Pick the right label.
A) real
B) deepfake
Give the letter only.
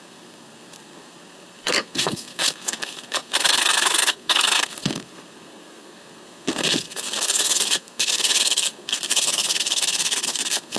B